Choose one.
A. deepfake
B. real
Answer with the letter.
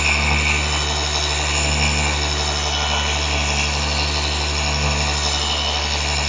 B